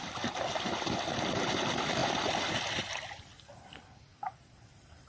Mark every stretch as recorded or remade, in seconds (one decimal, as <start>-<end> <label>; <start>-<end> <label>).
0.0-2.0 recorded; 2.0-3.2 remade; 3.2-5.1 recorded